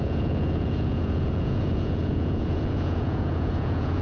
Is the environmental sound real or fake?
fake